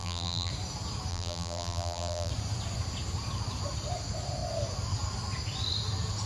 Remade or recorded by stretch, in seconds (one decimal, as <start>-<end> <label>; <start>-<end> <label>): 0.0-0.5 remade; 0.5-1.1 recorded; 1.1-2.3 remade; 2.3-6.3 recorded